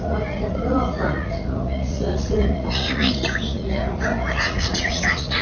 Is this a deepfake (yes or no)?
yes